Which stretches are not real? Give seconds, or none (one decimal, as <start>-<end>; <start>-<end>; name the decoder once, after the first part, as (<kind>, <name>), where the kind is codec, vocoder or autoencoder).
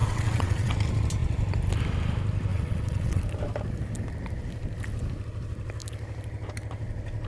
0.0-0.7 (vocoder, WaveNeXt); 2.5-3.2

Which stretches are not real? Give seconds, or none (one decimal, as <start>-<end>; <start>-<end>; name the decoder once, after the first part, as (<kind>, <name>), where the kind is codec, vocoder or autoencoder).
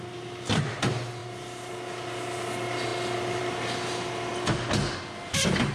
1.2-1.7 (vocoder, BigVGAN v2)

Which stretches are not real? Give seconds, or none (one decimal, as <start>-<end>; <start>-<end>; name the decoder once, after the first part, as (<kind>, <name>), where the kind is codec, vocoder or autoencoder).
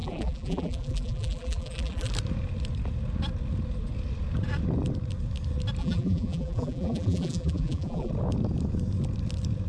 0.0-2.1 (vocoder, BigVGAN v2); 5.8-8.1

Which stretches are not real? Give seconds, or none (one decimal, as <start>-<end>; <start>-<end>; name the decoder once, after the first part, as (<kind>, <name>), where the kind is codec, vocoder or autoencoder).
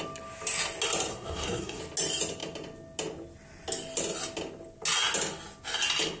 1.1-1.8 (codec, SNAC)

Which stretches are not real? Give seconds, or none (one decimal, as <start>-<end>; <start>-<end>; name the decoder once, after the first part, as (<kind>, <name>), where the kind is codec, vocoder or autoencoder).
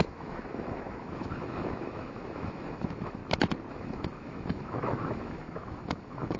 0.0-3.2 (autoencoder, DAC-VAE); 3.7-6.4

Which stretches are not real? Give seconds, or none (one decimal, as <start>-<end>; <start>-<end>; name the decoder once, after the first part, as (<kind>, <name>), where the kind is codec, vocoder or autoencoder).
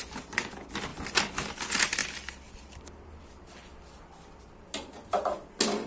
none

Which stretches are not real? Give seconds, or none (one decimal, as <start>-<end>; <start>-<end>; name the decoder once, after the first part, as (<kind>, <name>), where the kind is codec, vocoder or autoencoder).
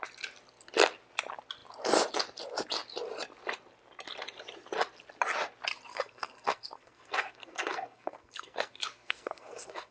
5.9-9.9 (codec, SNAC)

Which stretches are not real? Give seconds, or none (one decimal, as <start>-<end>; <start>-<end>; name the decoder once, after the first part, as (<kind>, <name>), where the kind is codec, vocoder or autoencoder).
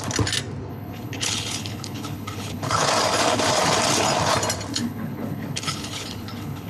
0.7-2.9 (codec, HILCodec); 4.7-6.7